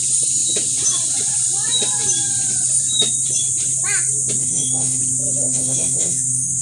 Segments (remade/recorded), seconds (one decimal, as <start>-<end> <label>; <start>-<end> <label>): 0.0-4.4 recorded; 4.4-5.0 remade; 5.0-5.4 recorded; 5.4-6.6 remade